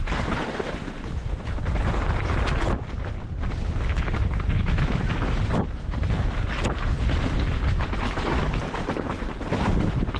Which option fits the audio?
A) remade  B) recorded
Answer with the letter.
B